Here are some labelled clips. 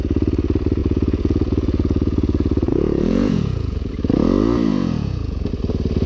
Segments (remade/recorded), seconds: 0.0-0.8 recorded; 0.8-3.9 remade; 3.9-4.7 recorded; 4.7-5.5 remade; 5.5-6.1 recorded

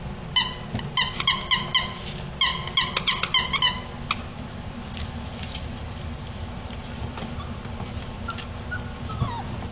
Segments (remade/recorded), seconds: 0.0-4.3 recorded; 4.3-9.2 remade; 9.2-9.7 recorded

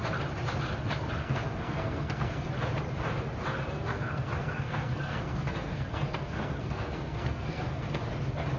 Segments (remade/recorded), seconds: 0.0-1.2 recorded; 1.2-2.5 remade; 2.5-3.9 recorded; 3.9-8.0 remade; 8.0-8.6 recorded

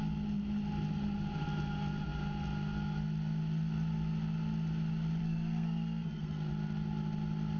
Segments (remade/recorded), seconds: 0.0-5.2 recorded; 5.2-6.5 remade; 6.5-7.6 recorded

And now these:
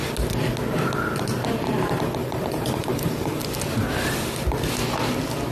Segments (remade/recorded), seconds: 0.0-2.2 recorded; 2.2-3.4 remade; 3.4-5.5 recorded